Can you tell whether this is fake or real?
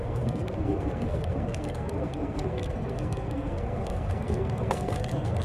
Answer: fake